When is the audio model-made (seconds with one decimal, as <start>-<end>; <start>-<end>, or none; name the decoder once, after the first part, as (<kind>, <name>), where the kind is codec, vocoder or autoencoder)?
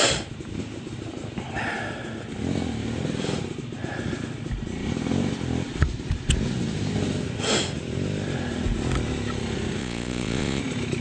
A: 9.8-10.6 (vocoder, Vocos)